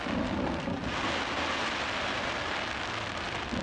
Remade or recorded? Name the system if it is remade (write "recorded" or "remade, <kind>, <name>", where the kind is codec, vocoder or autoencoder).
recorded